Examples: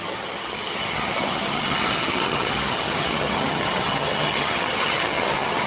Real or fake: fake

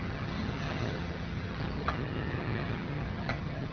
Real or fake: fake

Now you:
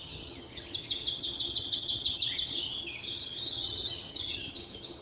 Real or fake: fake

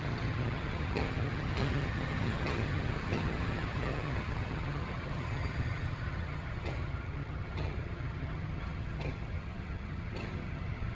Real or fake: fake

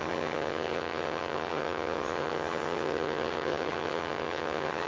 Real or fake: fake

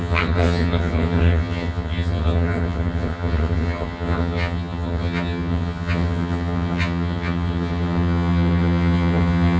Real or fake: fake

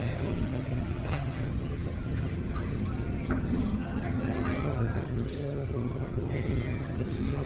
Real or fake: fake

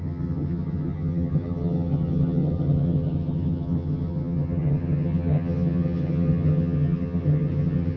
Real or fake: fake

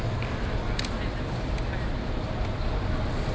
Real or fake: real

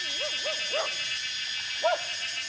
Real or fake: real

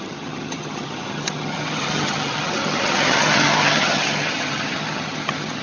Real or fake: fake